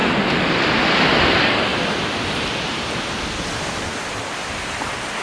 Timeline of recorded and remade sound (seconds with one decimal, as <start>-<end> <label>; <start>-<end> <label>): 0.0-5.2 recorded

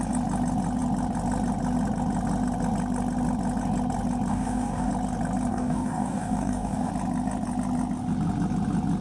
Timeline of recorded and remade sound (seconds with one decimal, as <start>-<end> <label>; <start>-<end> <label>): 0.0-4.3 recorded; 4.3-4.9 remade; 4.9-5.5 recorded; 5.5-6.9 remade; 6.9-9.0 recorded

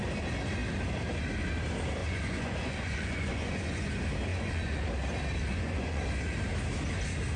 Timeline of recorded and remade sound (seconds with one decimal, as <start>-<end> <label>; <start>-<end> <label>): 0.0-2.0 recorded; 2.0-3.9 remade; 3.9-4.3 recorded; 4.3-4.8 remade; 4.8-5.5 recorded; 5.5-6.0 remade; 6.0-7.4 recorded

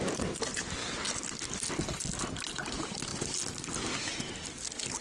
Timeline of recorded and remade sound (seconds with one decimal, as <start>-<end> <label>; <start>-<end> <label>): 0.0-5.0 recorded